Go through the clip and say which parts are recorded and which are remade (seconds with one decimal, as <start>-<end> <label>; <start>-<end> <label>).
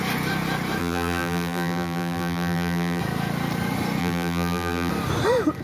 0.0-0.8 recorded; 0.8-3.0 remade; 3.0-4.0 recorded; 4.0-4.9 remade; 4.9-5.6 recorded